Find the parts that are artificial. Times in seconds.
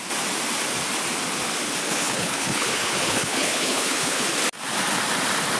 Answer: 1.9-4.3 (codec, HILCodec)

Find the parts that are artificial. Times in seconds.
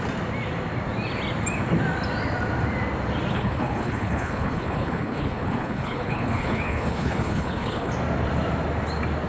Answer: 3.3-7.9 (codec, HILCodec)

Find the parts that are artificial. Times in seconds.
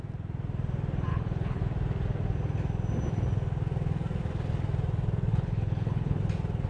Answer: 1.1-1.6 (codec, HILCodec); 5.3-6.2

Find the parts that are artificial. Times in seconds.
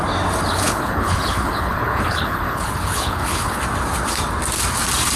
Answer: 0.5-3.6 (codec, HILCodec)